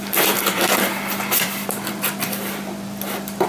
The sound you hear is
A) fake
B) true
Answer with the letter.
A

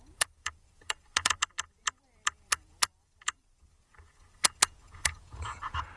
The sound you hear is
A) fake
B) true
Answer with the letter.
A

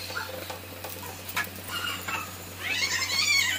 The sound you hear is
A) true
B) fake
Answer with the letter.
A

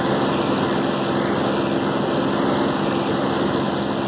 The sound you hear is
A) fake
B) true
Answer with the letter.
B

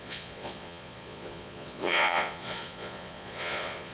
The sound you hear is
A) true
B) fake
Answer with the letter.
B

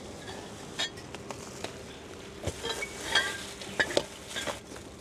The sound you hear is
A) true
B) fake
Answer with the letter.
A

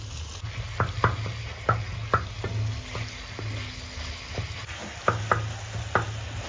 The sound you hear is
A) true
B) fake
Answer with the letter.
A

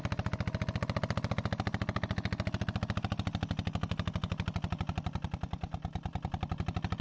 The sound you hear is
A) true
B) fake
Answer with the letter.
A